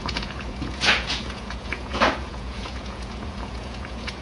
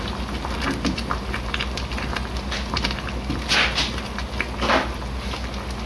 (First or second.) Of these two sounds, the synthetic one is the first